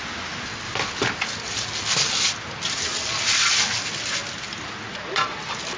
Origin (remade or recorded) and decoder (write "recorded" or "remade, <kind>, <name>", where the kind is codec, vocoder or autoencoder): recorded